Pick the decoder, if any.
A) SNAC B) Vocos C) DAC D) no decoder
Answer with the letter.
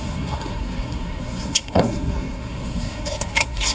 A